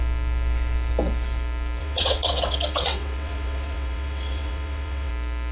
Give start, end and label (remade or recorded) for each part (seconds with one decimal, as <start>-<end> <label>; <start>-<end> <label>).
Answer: 0.0-1.8 recorded; 1.8-5.1 remade; 5.1-5.5 recorded